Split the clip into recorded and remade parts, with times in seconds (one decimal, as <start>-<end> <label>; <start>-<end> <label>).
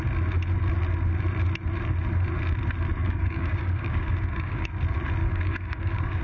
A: 0.0-3.0 recorded; 3.0-4.7 remade; 4.7-5.2 recorded; 5.2-6.2 remade